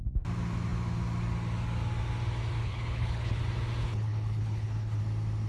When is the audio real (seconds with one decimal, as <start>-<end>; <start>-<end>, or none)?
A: 0.0-2.6; 3.4-3.8; 5.0-5.5

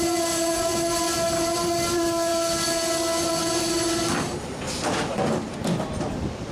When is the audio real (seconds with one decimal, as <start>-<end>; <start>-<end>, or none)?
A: 0.0-6.5

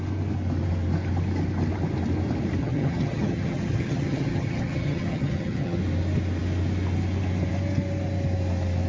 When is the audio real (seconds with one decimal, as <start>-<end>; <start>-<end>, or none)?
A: 0.0-2.6; 5.8-8.9

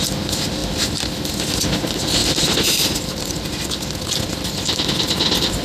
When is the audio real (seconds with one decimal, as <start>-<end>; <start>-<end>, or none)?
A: 0.0-0.6; 1.3-2.2; 2.8-4.3; 4.9-5.6

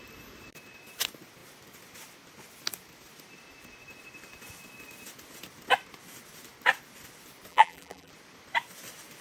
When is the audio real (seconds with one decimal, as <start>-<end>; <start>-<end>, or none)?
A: 0.0-7.5; 8.1-9.2

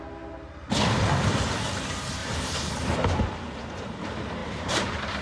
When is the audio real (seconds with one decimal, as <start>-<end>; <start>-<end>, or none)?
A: 0.0-2.2; 2.9-4.4

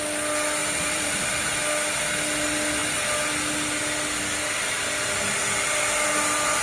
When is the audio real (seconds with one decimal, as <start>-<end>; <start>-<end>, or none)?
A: 0.0-0.6; 1.6-6.6

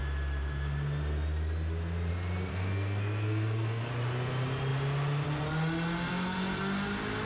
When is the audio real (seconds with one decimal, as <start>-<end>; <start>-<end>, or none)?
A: 0.0-2.5; 3.9-7.3